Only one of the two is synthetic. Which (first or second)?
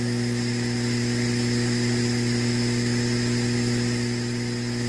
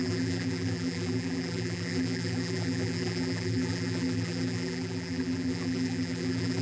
second